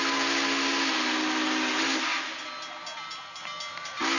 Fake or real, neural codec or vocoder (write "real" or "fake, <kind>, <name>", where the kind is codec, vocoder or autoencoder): real